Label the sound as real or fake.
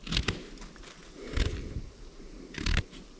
real